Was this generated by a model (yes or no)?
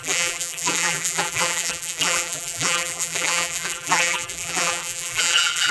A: yes